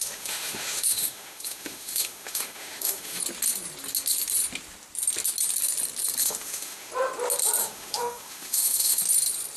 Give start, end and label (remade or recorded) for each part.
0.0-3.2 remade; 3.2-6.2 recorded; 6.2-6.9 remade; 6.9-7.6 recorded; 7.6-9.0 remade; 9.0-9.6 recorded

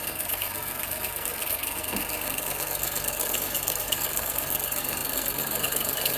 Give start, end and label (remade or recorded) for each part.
0.0-6.2 remade

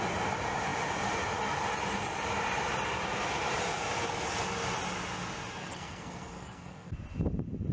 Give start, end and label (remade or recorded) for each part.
0.0-5.6 recorded; 5.6-6.9 remade; 6.9-7.7 recorded

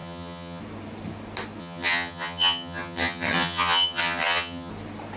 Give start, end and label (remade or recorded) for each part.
0.0-0.6 remade; 0.6-1.6 recorded; 1.6-4.7 remade; 4.7-5.2 recorded

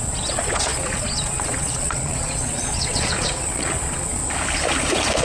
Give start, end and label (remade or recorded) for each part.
0.0-4.2 remade; 4.2-5.2 recorded

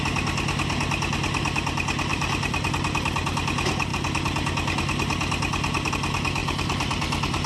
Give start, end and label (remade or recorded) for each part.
0.0-2.1 recorded; 2.1-2.7 remade; 2.7-6.4 recorded; 6.4-7.5 remade

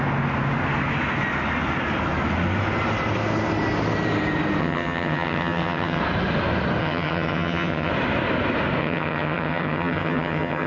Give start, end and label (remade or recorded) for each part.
0.0-4.6 recorded; 4.6-6.0 remade; 6.0-6.8 recorded; 6.8-7.9 remade; 7.9-8.8 recorded; 8.8-10.7 remade

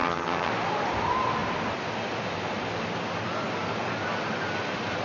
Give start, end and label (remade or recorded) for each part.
0.0-0.5 remade; 0.5-5.0 recorded